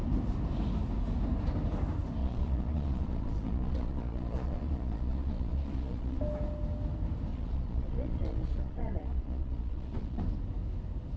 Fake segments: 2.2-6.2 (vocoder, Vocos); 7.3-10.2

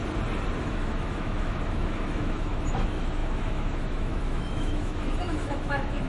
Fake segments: 0.6-6.1 (autoencoder, DAC-VAE)

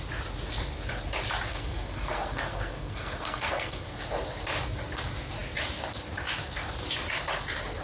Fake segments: 1.5-4.0 (codec, SNAC)

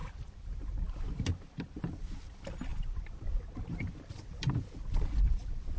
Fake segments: none

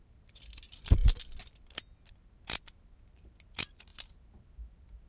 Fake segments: none

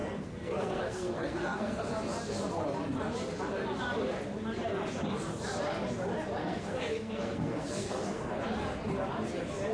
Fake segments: 0.0-1.8 (codec, SNAC); 6.4-8.4